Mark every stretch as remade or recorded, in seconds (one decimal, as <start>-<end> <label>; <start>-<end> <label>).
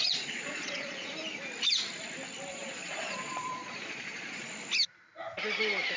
0.0-1.1 remade; 1.1-2.5 recorded; 2.5-4.5 remade; 4.5-6.0 recorded